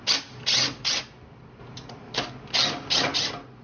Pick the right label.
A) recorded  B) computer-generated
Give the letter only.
A